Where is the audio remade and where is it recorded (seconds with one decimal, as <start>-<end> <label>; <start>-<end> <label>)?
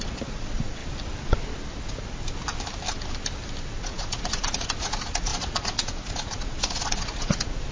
0.0-0.8 remade; 0.8-3.8 recorded; 3.8-7.7 remade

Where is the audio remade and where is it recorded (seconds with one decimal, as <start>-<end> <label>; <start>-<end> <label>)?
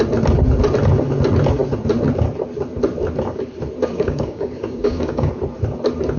0.0-3.9 recorded; 3.9-5.3 remade; 5.3-6.2 recorded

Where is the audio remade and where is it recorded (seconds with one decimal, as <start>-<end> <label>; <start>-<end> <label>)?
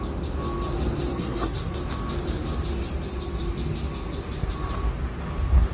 0.0-1.1 recorded; 1.1-1.8 remade; 1.8-5.7 recorded